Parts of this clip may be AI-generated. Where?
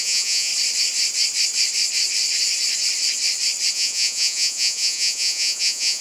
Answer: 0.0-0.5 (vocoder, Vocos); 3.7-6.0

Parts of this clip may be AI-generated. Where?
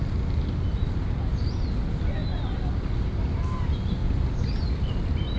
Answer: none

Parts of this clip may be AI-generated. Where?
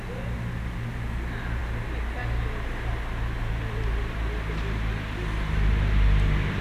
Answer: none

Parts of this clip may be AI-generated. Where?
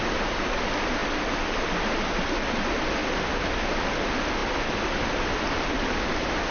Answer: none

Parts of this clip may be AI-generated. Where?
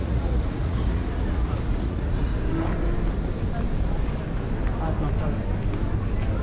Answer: 0.0-2.3 (vocoder, Vocos)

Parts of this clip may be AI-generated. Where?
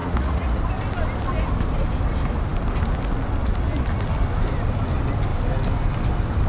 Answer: 0.0-0.6 (vocoder, Vocos)